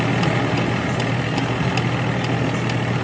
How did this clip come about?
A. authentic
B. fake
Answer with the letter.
A